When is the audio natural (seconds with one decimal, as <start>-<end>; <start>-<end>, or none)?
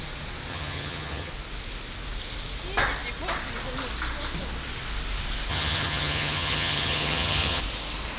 0.0-0.5; 1.3-5.5; 7.6-8.2